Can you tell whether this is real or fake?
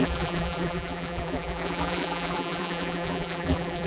fake